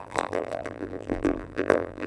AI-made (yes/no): yes